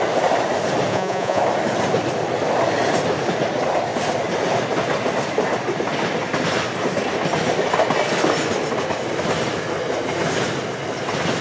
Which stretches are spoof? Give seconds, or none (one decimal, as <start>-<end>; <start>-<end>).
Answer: 0.9-1.4